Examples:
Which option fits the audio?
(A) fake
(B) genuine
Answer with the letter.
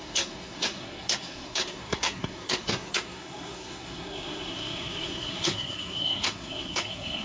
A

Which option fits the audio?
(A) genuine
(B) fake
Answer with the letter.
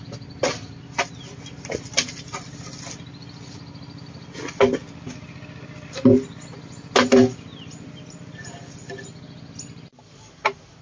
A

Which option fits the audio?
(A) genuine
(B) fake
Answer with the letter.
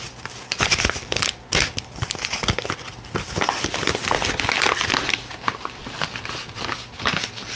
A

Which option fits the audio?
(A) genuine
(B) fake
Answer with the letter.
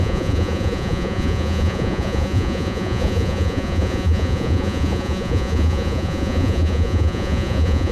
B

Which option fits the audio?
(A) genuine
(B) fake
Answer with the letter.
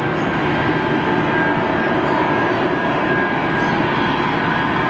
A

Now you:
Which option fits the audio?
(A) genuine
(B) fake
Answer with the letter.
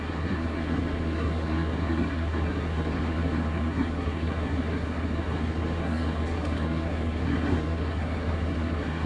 B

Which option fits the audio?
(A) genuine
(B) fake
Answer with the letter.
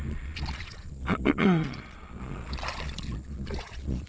B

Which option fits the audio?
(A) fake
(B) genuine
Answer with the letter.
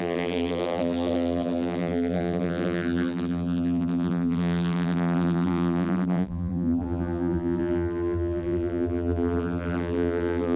A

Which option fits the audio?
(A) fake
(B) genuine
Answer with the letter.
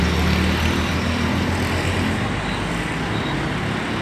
B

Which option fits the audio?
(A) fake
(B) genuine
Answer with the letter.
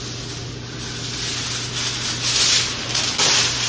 B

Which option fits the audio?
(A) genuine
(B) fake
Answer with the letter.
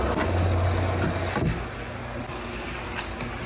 A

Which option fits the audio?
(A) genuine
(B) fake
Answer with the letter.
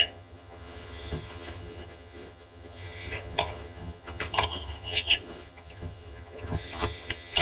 B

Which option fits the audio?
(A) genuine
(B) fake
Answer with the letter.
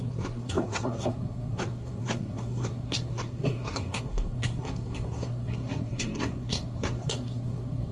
B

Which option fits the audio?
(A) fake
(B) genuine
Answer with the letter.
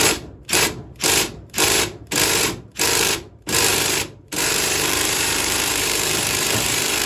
A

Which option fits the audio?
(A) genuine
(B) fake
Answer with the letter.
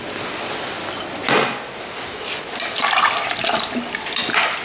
A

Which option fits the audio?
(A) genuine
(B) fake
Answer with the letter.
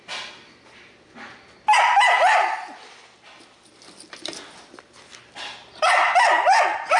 A